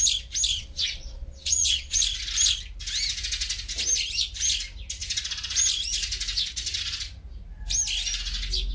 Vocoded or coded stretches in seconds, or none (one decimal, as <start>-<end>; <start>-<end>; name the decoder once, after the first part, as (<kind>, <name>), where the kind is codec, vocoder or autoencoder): 0.5-2.0 (vocoder, Vocos)